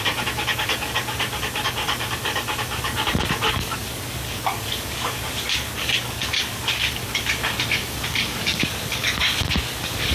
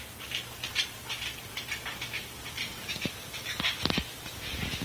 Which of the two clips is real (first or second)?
second